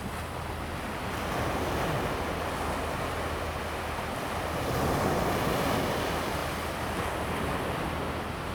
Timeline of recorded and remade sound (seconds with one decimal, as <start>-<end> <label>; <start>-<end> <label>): 0.0-8.5 recorded